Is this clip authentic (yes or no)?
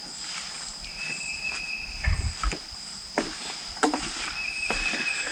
yes